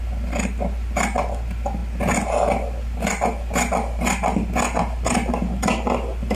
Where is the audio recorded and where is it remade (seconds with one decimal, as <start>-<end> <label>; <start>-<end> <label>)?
0.0-6.3 recorded